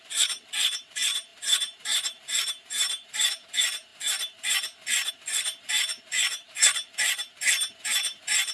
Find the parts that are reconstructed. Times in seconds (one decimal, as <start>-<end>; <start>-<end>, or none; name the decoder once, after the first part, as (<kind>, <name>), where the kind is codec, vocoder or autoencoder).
0.0-8.5 (vocoder, BigVGAN v2)